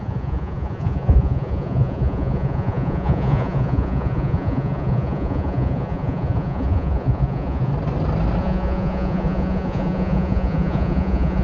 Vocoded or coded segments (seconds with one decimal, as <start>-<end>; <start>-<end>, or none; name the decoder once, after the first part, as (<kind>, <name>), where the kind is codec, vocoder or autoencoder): 0.0-7.7 (vocoder, Vocos); 8.4-11.4